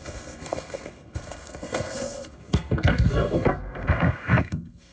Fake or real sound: fake